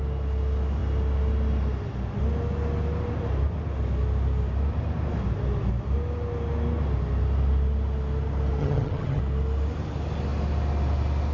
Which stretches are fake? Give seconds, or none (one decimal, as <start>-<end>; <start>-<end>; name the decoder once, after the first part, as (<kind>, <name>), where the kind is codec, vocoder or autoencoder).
8.6-9.2 (vocoder, HiFi-GAN)